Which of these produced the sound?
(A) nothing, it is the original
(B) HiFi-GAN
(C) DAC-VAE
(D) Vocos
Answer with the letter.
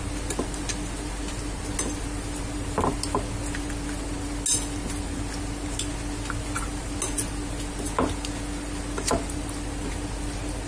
A